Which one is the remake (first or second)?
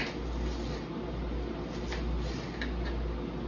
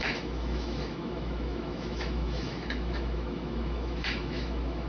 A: second